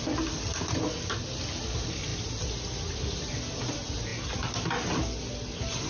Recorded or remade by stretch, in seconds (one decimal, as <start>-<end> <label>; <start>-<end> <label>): 0.0-5.9 recorded